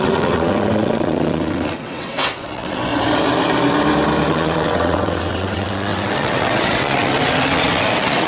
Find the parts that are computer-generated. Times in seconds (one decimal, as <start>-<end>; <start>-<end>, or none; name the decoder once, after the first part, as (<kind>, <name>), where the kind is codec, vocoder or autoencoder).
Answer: 0.0-2.9 (vocoder, WaveNeXt); 4.3-8.3